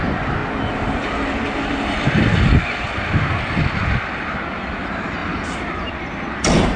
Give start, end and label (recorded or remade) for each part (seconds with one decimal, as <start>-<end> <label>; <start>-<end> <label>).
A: 0.0-5.2 recorded; 5.2-5.9 remade; 5.9-6.8 recorded